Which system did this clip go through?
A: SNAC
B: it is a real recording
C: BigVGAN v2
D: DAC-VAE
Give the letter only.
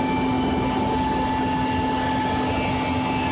B